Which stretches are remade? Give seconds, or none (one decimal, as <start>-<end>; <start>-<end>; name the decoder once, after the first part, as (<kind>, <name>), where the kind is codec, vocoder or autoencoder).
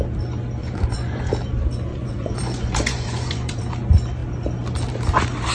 0.6-1.3 (vocoder, Vocos); 1.9-3.6